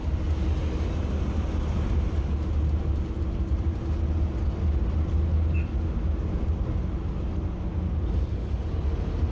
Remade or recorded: recorded